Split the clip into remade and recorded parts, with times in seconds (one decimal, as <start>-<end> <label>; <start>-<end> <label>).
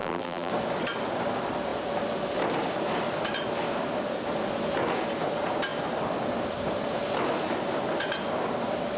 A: 0.0-0.5 remade; 0.5-9.0 recorded